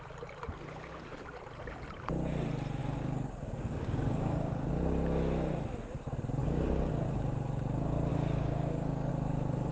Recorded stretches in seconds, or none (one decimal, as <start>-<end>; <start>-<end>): 0.0-2.8; 4.7-6.4; 6.9-8.1; 9.1-9.7